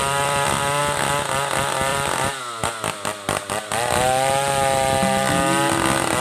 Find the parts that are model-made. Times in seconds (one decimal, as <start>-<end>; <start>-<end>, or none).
0.0-0.8; 1.9-2.4